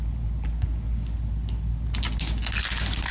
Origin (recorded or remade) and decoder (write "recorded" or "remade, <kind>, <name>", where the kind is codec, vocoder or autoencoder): recorded